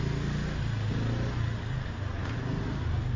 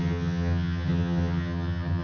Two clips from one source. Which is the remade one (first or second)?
second